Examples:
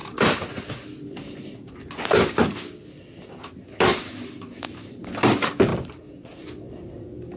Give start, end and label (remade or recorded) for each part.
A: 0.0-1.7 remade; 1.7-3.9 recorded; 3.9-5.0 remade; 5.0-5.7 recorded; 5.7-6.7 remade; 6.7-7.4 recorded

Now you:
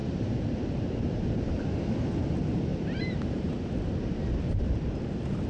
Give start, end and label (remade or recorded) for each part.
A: 0.0-1.6 remade; 1.6-2.7 recorded; 2.7-3.7 remade; 3.7-5.5 recorded